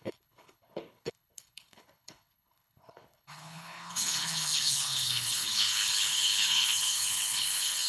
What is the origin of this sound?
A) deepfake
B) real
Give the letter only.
A